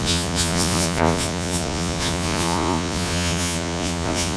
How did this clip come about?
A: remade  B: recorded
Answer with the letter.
A